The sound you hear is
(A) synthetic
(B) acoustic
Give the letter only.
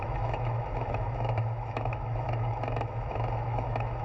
A